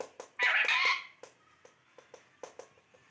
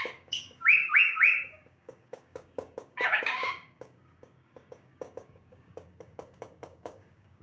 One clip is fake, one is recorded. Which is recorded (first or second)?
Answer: first